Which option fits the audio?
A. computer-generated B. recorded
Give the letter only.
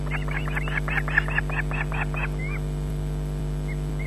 B